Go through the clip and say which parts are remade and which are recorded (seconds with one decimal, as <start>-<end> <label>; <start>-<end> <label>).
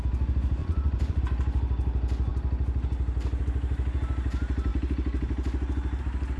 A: 0.0-0.6 recorded; 0.6-1.2 remade; 1.2-6.4 recorded